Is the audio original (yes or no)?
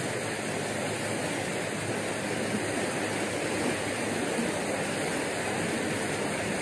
yes